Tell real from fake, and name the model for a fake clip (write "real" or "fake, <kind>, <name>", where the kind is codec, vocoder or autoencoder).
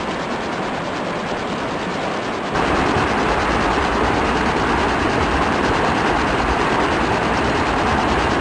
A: real